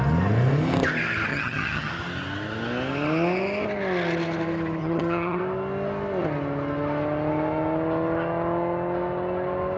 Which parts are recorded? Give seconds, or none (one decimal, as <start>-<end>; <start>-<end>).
0.0-1.3; 1.9-4.8; 5.4-9.8